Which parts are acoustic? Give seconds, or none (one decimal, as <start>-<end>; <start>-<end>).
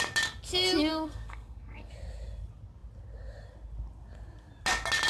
0.0-0.9; 1.9-5.1